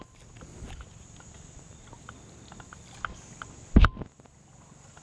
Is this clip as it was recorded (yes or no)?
yes